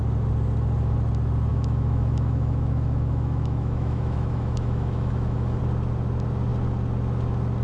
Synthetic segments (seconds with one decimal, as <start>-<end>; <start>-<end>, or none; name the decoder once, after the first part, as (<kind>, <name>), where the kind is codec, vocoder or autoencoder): 1.5-5.6 (autoencoder, DAC-VAE)